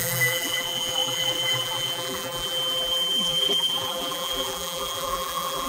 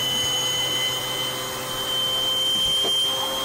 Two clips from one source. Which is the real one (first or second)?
second